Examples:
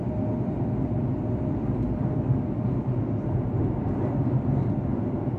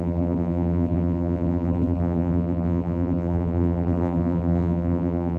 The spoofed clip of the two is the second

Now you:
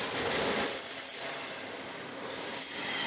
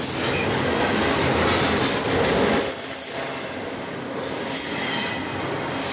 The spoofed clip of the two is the first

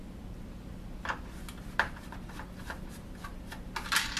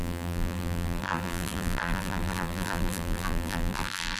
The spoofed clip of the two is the second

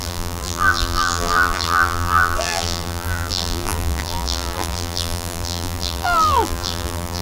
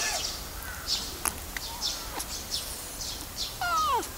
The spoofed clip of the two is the first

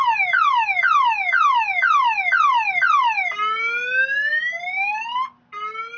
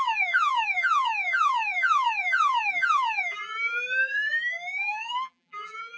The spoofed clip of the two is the second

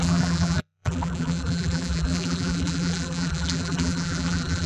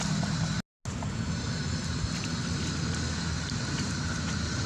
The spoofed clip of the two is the first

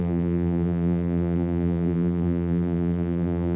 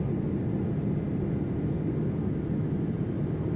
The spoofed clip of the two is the first